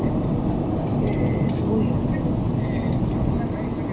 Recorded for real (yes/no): yes